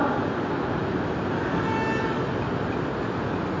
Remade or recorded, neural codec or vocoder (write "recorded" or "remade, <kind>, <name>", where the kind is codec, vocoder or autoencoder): recorded